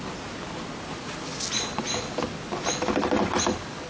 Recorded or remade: recorded